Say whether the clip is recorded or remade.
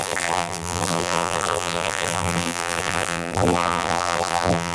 remade